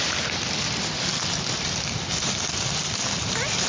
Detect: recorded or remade recorded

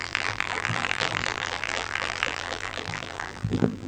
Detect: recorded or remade remade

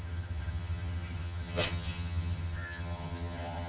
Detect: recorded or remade remade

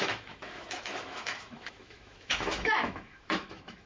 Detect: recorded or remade remade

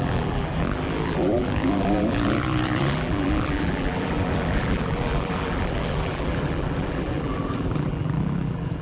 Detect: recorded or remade remade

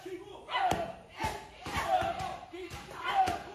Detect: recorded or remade recorded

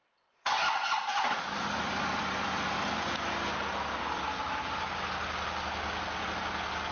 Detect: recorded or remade recorded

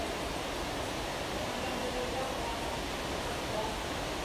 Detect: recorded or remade remade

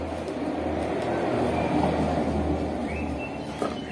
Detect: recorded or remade recorded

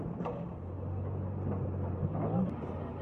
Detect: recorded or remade recorded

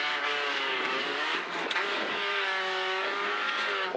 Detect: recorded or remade remade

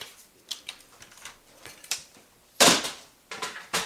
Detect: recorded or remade remade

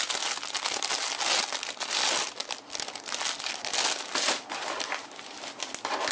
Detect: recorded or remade recorded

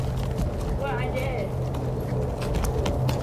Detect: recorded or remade recorded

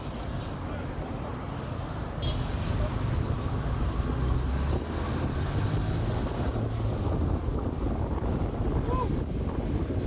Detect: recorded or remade recorded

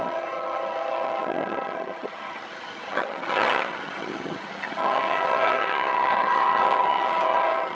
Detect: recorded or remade remade